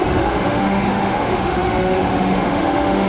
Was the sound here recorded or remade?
remade